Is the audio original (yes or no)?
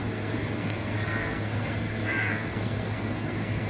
no